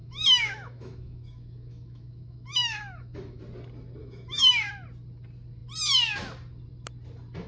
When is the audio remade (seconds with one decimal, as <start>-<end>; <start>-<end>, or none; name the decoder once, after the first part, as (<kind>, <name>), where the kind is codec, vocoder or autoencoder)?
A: 0.0-3.4 (autoencoder, DAC-VAE); 4.0-4.7